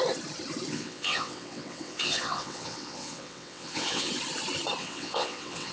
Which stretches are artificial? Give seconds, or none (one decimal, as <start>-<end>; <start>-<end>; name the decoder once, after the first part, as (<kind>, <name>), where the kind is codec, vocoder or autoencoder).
0.7-4.1 (vocoder, WaveNeXt); 4.8-5.7